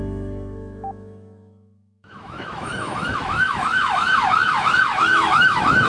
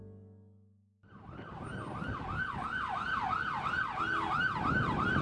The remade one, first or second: first